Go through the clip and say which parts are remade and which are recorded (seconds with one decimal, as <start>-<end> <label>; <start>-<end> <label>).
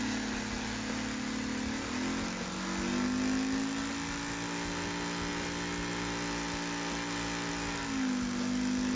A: 0.0-9.0 recorded